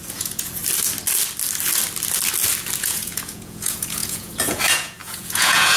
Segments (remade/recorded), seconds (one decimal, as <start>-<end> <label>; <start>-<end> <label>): 0.0-0.6 remade; 0.6-2.8 recorded; 2.8-5.8 remade